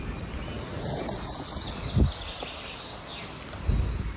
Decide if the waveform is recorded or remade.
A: recorded